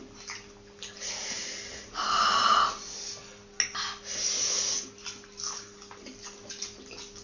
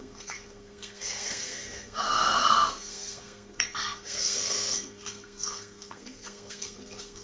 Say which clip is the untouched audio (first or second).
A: first